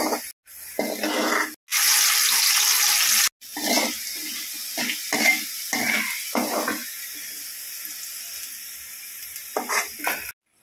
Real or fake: real